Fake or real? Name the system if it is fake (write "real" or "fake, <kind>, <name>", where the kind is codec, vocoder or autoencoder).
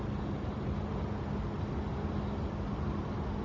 real